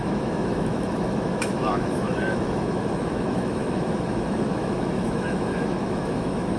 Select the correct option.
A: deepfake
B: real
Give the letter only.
A